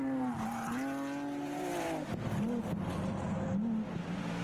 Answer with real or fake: real